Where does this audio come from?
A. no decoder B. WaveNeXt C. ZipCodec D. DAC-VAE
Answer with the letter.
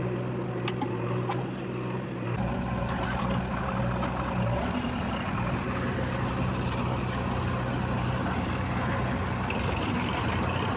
A